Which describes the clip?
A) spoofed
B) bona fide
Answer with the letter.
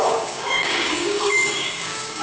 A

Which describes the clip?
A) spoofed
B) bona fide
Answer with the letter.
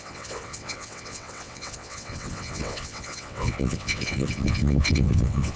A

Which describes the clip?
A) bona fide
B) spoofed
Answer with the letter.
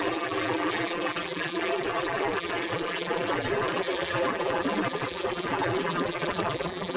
B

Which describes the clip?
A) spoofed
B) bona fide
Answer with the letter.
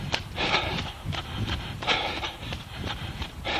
A